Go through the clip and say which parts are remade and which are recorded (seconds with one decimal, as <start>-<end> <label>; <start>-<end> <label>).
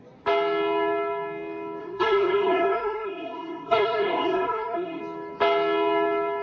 0.0-1.8 recorded; 1.8-5.0 remade; 5.0-6.4 recorded